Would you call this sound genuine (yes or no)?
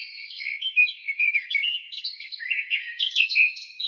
no